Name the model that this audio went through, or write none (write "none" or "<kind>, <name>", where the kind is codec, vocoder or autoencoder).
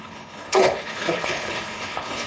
codec, HILCodec